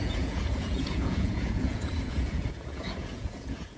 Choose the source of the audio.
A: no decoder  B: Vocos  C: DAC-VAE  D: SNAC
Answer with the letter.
B